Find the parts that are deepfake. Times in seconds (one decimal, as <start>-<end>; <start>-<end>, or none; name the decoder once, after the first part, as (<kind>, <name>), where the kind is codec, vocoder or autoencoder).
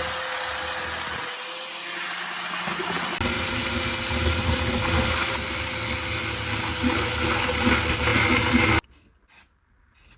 none